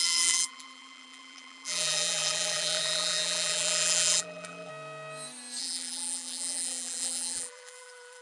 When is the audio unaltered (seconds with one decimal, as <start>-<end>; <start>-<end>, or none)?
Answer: 4.7-5.6